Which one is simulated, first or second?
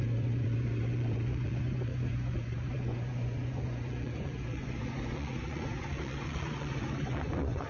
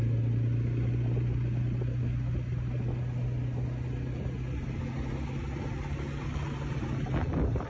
first